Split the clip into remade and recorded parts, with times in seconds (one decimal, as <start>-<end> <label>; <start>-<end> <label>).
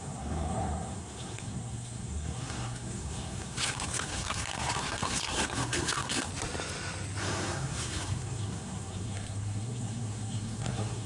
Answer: 0.0-6.3 remade; 6.3-7.2 recorded; 7.2-11.1 remade